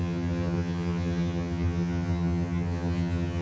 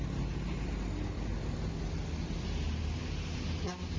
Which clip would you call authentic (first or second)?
second